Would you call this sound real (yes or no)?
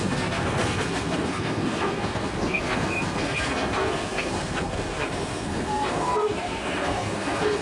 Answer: no